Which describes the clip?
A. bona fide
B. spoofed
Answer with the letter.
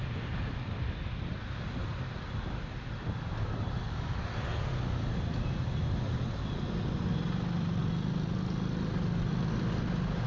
A